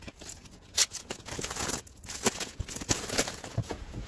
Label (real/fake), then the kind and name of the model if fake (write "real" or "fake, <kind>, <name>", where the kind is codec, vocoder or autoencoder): fake, vocoder, Vocos